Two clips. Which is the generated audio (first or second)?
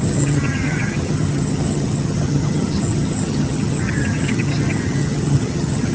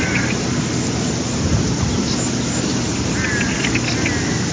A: first